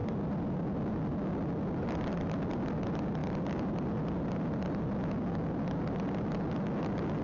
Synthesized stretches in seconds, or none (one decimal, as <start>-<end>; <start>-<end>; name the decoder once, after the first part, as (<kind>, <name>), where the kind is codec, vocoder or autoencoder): none